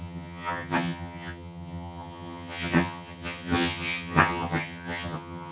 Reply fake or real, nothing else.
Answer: fake